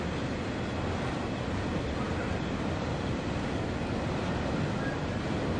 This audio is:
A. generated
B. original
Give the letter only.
B